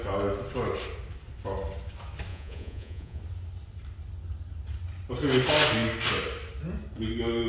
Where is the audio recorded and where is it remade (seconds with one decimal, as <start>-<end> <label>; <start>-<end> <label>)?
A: 0.0-2.3 recorded; 2.3-3.2 remade; 3.2-7.5 recorded